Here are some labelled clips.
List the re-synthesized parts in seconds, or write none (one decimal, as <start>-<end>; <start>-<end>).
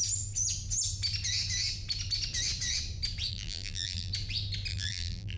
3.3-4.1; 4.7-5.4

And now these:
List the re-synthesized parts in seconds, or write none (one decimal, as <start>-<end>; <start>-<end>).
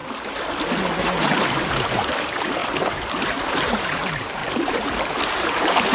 1.0-4.4; 5.1-5.9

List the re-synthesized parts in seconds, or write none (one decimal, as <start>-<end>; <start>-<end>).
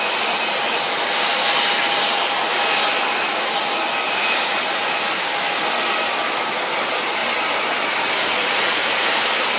0.0-1.4; 4.8-5.5; 6.3-7.2; 8.1-9.6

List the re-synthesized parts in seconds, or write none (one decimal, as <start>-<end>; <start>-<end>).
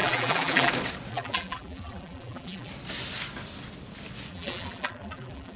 0.0-0.7; 1.1-2.7; 4.3-5.6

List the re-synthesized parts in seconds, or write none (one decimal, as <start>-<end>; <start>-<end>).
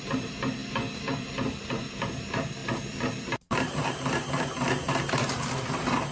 0.0-0.6; 1.2-6.1